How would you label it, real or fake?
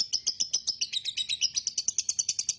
real